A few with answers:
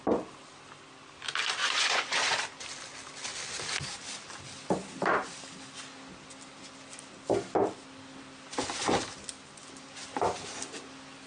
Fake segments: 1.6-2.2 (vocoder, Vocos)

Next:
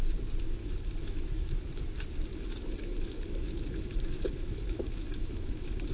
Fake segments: 0.6-1.8 (autoencoder, DAC-VAE); 2.3-5.9

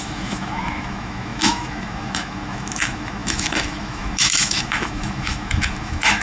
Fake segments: 0.0-6.2 (autoencoder, DAC-VAE)

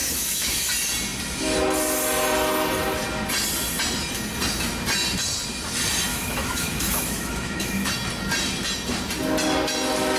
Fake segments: 0.0-0.7 (autoencoder, DAC-VAE); 6.1-7.9